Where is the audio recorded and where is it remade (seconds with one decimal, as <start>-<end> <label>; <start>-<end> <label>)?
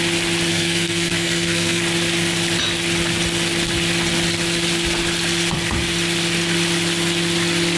0.0-0.5 recorded; 0.5-1.8 remade; 1.8-7.8 recorded